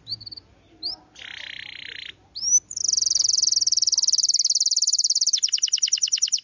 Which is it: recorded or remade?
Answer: recorded